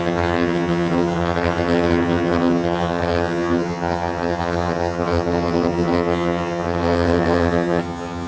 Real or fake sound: fake